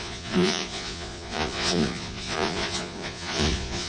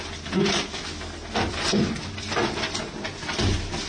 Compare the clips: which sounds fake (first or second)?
first